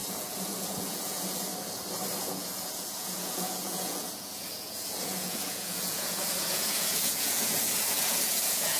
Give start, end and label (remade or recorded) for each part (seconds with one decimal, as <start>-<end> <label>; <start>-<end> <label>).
0.0-1.5 remade; 1.5-2.2 recorded; 2.2-8.8 remade